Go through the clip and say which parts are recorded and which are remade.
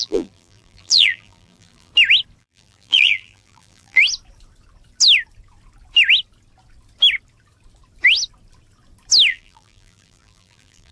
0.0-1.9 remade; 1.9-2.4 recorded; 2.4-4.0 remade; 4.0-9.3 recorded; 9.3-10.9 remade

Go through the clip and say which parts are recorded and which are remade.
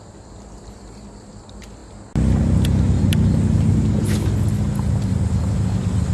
0.0-6.1 recorded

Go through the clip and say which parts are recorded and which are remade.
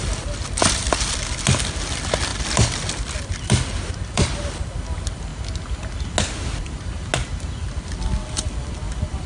0.0-5.3 remade; 5.3-6.6 recorded; 6.6-7.1 remade; 7.1-7.6 recorded; 7.6-9.3 remade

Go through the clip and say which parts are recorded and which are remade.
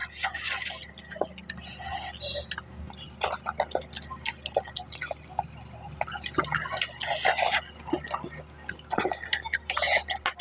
0.0-10.4 recorded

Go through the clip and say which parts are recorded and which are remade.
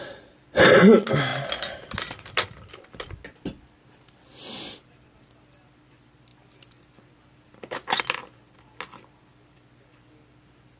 0.0-10.8 recorded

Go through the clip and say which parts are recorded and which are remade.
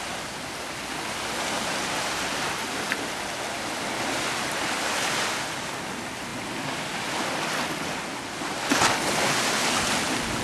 0.0-10.4 recorded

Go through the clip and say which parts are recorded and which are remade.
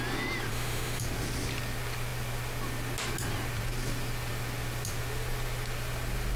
0.0-0.5 recorded; 0.5-1.0 remade; 1.0-6.4 recorded